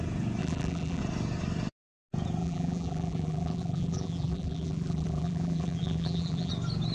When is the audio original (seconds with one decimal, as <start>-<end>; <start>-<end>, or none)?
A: 0.0-0.4; 1.0-2.4; 6.5-6.9